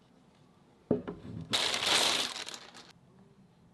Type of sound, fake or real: real